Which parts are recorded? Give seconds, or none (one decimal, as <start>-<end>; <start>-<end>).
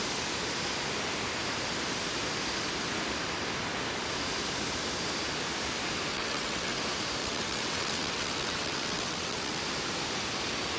0.0-6.1; 6.8-7.2; 9.6-10.8